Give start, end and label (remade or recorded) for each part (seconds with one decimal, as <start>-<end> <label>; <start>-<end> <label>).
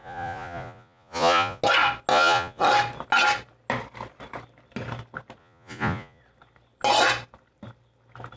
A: 0.0-1.6 remade; 1.6-2.1 recorded; 2.1-2.6 remade; 2.6-5.4 recorded; 5.4-6.2 remade; 6.2-8.4 recorded